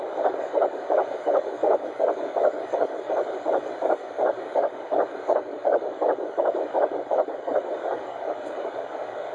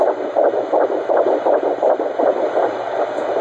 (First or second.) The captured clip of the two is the second